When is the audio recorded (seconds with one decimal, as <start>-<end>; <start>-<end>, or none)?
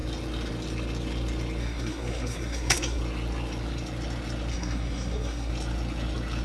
0.0-1.6; 3.0-4.5; 5.5-6.4